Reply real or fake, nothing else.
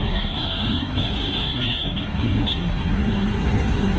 fake